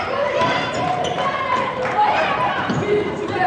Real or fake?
fake